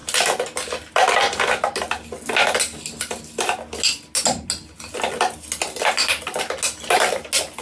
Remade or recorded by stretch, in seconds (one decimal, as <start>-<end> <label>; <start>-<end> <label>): 0.0-7.6 recorded